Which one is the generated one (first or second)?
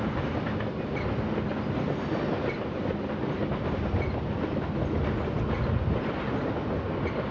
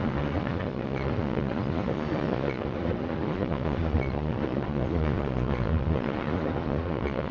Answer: second